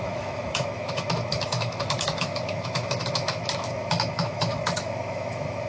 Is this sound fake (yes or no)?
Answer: yes